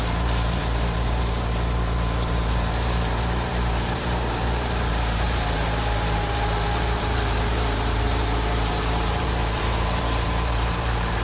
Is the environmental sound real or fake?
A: fake